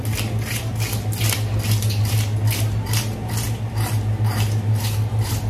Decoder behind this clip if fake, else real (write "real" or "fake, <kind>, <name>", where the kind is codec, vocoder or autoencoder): real